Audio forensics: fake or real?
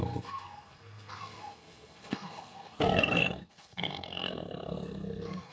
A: fake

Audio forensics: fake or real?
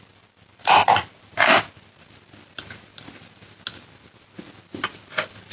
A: real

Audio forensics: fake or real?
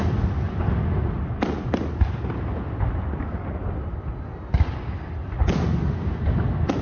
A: real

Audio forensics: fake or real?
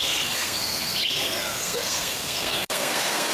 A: fake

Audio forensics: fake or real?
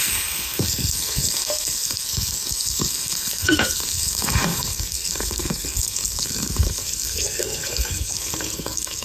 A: fake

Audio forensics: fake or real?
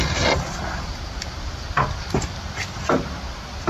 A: real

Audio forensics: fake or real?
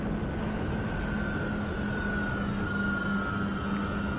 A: real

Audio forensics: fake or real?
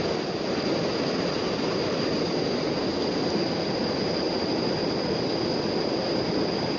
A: real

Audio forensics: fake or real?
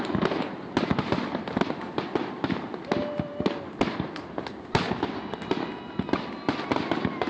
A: real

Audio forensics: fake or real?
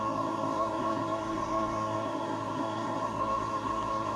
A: fake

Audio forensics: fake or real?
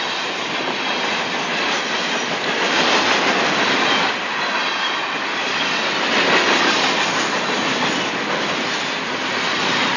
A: real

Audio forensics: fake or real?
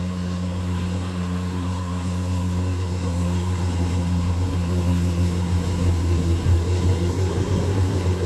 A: fake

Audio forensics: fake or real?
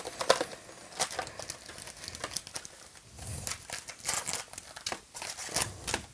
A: real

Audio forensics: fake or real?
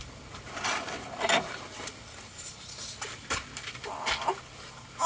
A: real